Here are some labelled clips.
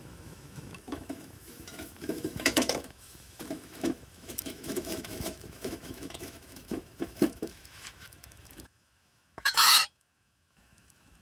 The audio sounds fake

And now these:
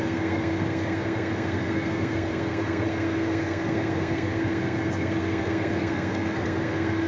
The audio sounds fake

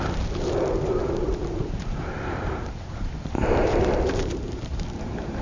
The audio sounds fake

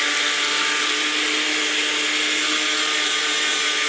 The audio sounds real